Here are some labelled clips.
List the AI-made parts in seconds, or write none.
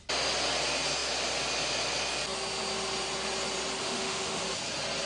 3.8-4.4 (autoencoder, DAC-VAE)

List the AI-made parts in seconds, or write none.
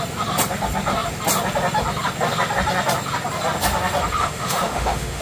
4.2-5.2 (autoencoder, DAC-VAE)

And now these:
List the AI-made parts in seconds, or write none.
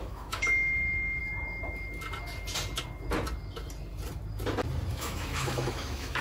0.0-1.2 (autoencoder, DAC-VAE); 4.9-6.2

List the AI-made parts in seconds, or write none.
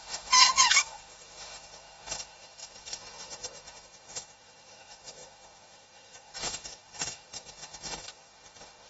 0.0-8.9 (autoencoder, DAC-VAE)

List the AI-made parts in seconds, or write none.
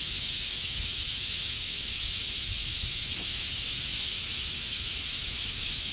0.0-5.9 (autoencoder, DAC-VAE)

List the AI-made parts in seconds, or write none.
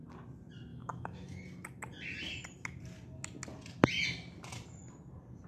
0.7-1.4 (autoencoder, DAC-VAE)